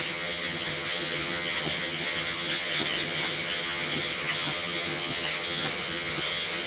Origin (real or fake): fake